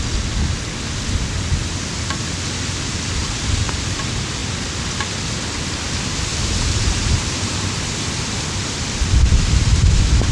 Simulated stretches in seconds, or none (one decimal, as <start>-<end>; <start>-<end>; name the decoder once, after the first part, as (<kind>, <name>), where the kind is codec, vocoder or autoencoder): 6.3-7.7 (vocoder, BigVGAN v2)